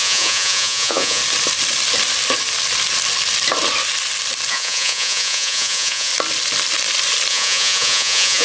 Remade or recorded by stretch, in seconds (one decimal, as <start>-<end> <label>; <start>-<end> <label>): 0.0-1.2 remade; 1.2-4.5 recorded; 4.5-6.1 remade; 6.1-7.3 recorded; 7.3-8.4 remade